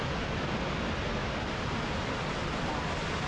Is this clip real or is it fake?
real